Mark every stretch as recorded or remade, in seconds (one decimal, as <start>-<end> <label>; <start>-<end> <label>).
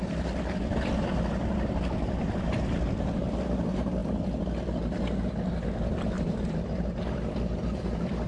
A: 0.0-8.3 recorded